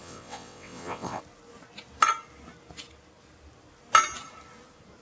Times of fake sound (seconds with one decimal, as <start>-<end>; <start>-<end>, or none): 0.0-1.2